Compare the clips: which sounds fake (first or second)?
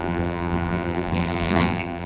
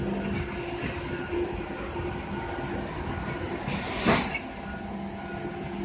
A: first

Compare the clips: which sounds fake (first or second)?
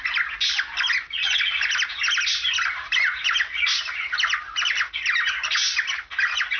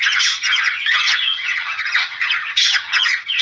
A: second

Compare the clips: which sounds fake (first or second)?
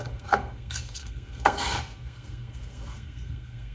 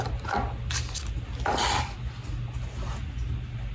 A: first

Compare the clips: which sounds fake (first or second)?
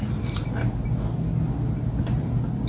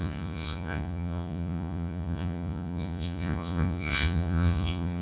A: second